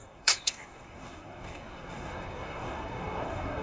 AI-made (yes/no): yes